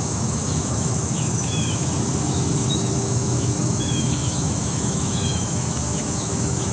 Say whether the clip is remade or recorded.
remade